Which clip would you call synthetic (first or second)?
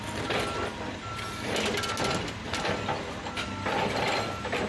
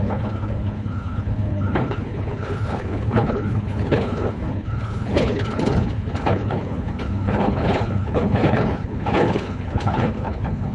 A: second